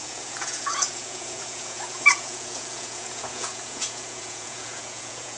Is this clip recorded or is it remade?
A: remade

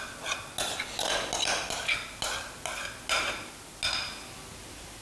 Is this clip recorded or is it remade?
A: recorded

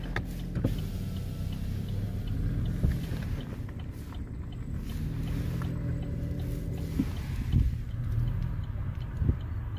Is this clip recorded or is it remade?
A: recorded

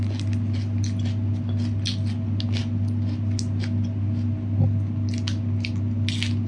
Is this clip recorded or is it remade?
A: recorded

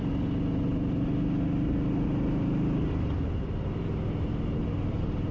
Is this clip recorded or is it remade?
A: recorded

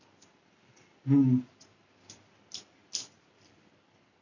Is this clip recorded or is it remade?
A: recorded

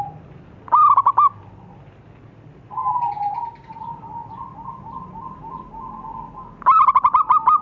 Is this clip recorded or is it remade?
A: recorded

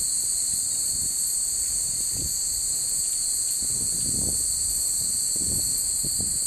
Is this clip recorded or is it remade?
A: recorded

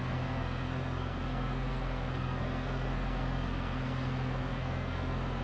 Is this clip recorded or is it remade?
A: remade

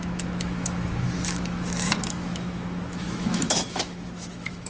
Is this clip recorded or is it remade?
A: remade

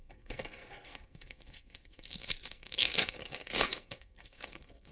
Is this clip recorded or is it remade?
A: remade